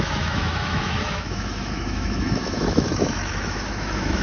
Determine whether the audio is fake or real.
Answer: fake